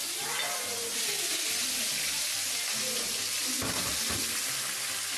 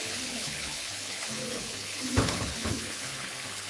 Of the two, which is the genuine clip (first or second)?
first